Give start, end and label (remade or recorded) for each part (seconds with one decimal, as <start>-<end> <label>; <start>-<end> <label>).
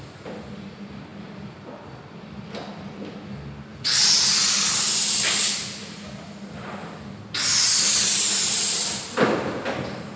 0.0-10.2 recorded